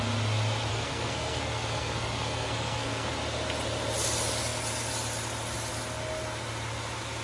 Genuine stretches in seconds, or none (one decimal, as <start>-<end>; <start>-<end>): 0.0-0.7; 3.1-7.2